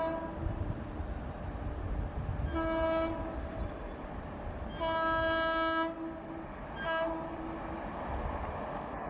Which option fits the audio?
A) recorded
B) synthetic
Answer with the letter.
A